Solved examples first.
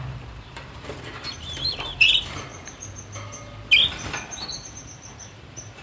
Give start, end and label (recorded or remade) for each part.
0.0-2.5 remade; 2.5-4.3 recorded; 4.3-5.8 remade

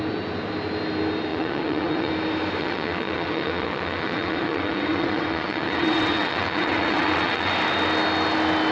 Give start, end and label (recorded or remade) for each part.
0.0-1.3 recorded; 1.3-2.1 remade; 2.1-2.6 recorded; 2.6-7.5 remade; 7.5-8.7 recorded

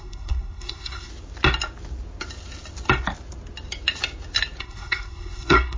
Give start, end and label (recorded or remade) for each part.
0.0-1.1 remade; 1.1-4.6 recorded; 4.6-5.8 remade